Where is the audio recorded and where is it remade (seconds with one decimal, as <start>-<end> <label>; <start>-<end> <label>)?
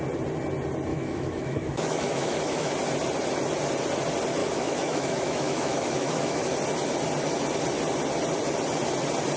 0.0-0.9 recorded; 0.9-2.7 remade; 2.7-4.4 recorded; 4.4-6.5 remade; 6.5-9.4 recorded